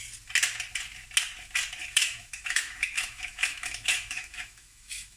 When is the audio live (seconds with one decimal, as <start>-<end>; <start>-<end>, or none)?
0.0-1.8